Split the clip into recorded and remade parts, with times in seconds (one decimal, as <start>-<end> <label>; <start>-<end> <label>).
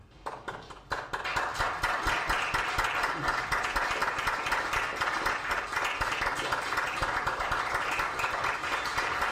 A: 0.0-9.3 recorded